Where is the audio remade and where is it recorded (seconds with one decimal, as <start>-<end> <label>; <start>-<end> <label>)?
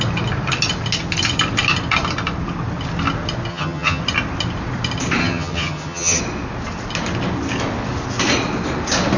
0.0-3.5 recorded; 3.5-4.0 remade; 4.0-5.2 recorded; 5.2-6.2 remade; 6.2-9.2 recorded